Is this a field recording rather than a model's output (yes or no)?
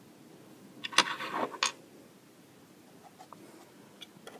yes